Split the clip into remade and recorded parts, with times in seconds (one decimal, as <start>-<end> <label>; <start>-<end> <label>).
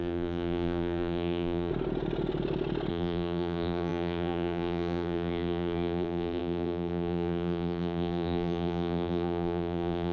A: 0.0-1.7 remade; 1.7-2.9 recorded; 2.9-10.1 remade